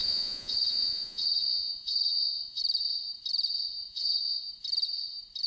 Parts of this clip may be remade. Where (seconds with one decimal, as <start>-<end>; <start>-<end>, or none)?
0.0-2.6; 3.8-4.4